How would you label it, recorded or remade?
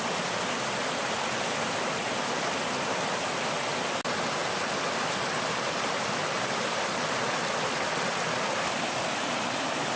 recorded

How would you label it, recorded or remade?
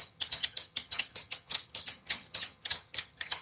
remade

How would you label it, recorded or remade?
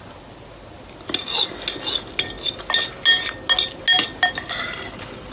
recorded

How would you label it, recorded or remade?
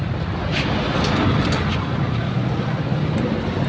recorded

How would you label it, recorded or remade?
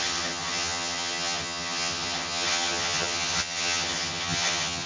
remade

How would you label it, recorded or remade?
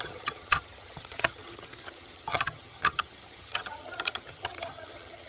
remade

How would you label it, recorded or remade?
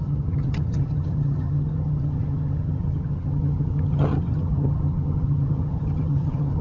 remade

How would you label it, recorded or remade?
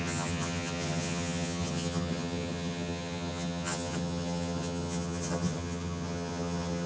remade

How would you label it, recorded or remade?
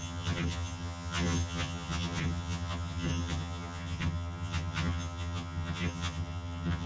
remade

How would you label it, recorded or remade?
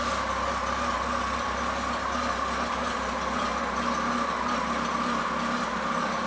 recorded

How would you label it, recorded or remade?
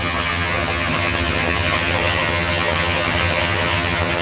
remade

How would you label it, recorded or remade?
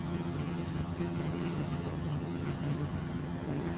remade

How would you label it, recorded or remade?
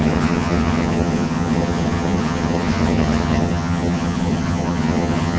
remade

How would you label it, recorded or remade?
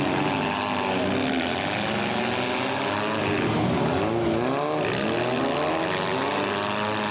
recorded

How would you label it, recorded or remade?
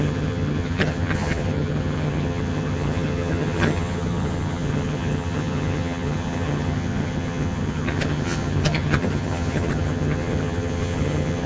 remade